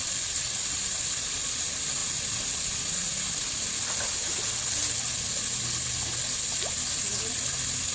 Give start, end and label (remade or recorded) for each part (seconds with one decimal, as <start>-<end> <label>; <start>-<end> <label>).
0.0-7.9 recorded